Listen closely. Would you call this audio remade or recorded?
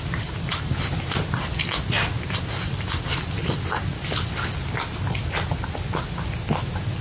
recorded